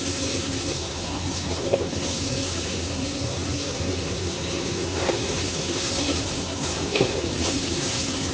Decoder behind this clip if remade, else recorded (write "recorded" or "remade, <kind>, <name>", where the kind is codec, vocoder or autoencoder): remade, codec, SNAC